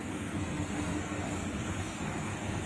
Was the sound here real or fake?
fake